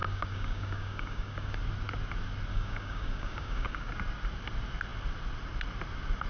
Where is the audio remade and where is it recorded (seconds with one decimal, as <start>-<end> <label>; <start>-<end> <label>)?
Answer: 0.0-1.6 remade; 1.6-2.5 recorded; 2.5-3.9 remade; 3.9-6.3 recorded